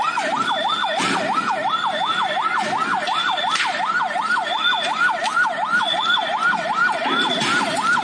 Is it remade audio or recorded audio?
recorded